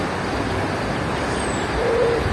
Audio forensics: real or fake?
real